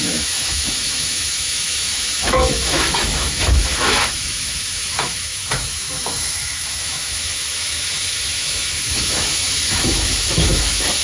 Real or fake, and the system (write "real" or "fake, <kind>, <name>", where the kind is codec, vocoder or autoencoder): fake, autoencoder, DAC-VAE